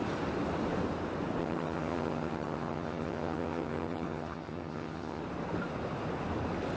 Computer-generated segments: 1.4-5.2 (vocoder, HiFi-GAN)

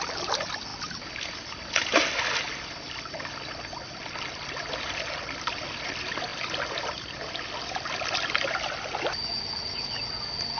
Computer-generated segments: none

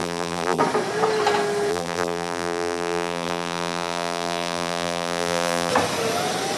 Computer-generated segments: 0.0-0.6 (vocoder, BigVGAN v2); 1.7-5.7

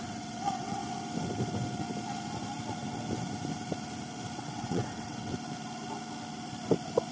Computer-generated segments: 0.0-0.8 (vocoder, WaveNeXt); 4.4-5.3

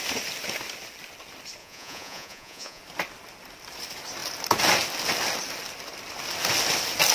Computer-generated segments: 1.6-2.8 (vocoder, Vocos)